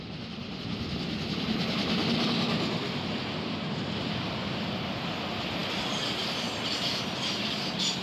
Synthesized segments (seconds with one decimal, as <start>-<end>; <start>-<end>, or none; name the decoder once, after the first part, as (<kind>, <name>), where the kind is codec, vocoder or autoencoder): none